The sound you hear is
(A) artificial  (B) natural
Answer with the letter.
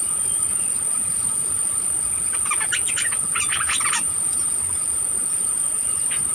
A